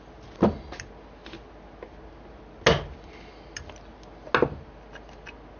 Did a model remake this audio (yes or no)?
no